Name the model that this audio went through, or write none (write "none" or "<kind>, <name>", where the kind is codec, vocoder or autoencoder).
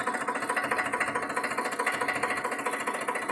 none